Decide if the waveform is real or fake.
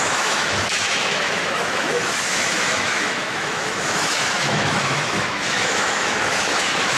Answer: fake